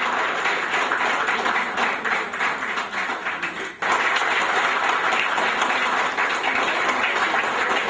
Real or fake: real